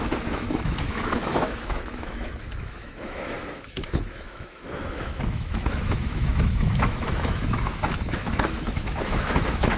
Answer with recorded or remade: remade